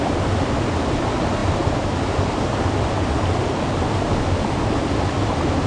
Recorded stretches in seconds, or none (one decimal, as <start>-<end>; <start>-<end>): 0.0-5.7